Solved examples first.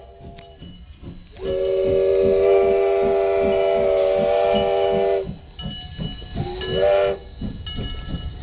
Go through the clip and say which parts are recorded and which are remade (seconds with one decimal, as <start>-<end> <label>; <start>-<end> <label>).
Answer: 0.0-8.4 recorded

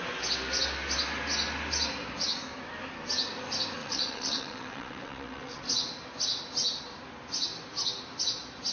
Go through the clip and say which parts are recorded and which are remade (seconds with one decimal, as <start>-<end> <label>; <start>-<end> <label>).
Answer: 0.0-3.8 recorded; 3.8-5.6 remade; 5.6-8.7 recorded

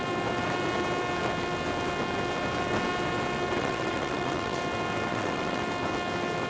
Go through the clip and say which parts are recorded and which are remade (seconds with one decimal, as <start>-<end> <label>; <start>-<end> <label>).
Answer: 0.0-3.6 recorded; 3.6-4.6 remade; 4.6-5.1 recorded; 5.1-5.6 remade; 5.6-6.5 recorded

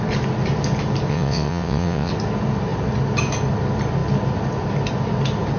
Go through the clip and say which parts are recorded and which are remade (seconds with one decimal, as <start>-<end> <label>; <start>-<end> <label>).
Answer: 0.0-1.1 recorded; 1.1-2.1 remade; 2.1-5.6 recorded

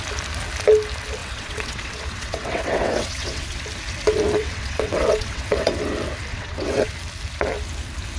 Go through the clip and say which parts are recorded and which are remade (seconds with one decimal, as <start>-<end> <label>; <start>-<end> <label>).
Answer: 0.0-1.2 recorded; 1.2-3.6 remade; 3.6-4.4 recorded; 4.4-5.7 remade; 5.7-6.3 recorded; 6.3-6.9 remade; 6.9-8.2 recorded